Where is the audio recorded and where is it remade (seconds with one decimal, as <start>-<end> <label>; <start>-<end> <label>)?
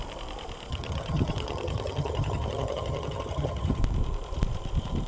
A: 0.0-0.7 recorded; 0.7-3.8 remade; 3.8-5.1 recorded